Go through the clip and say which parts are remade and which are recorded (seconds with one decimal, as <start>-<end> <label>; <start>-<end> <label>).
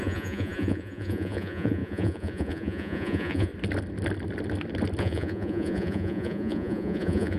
0.0-3.5 remade; 3.5-5.0 recorded; 5.0-7.4 remade